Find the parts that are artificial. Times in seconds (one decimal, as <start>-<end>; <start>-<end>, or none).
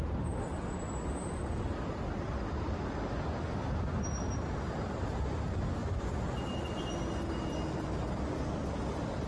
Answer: 5.8-6.9